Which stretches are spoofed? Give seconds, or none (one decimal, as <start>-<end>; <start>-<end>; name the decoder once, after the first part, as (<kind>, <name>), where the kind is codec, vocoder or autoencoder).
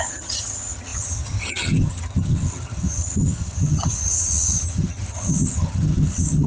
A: 0.0-6.5 (vocoder, HiFi-GAN)